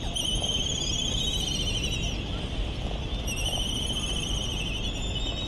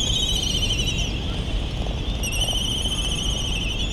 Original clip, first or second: second